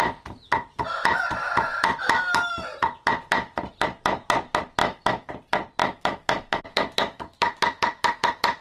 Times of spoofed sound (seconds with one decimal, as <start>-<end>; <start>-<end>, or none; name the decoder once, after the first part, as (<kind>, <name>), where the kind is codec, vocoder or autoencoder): 4.8-5.3 (autoencoder, DAC-VAE); 5.8-8.6

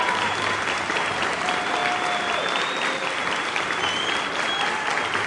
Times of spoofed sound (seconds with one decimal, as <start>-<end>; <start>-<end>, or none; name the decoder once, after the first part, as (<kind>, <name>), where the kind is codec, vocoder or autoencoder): 0.0-1.8 (vocoder, BigVGAN v2)

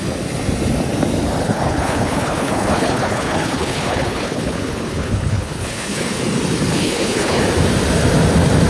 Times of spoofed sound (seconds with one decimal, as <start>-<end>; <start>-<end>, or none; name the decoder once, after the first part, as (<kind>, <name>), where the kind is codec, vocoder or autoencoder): 1.4-6.2 (codec, HILCodec); 6.7-7.4